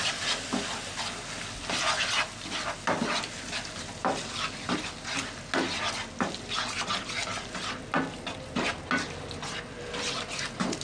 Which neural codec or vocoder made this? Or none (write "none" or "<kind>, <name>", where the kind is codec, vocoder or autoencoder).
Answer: none